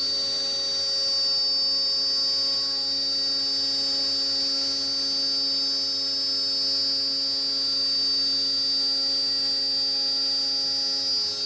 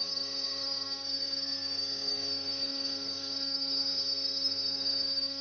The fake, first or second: second